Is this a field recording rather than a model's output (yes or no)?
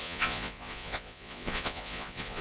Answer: no